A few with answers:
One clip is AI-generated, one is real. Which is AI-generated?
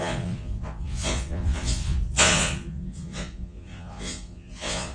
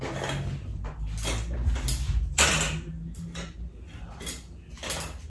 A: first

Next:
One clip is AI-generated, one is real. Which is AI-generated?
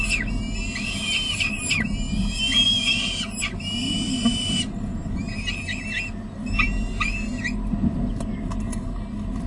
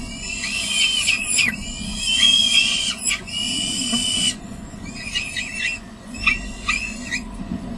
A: second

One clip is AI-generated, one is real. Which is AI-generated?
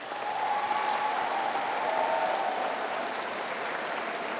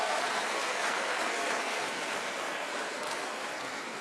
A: second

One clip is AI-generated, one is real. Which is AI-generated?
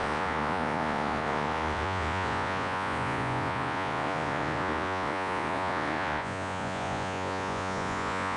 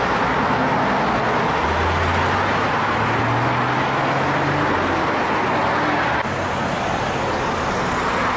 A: first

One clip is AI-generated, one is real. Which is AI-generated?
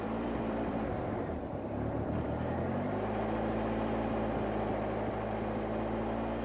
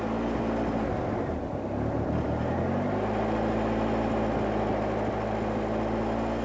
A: first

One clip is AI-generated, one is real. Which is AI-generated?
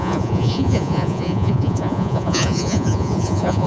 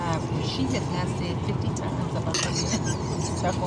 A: first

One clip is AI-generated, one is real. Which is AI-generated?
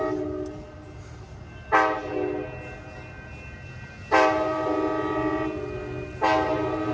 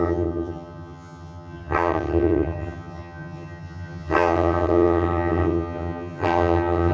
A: second